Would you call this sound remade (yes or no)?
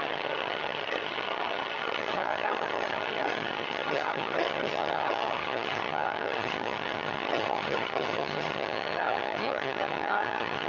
yes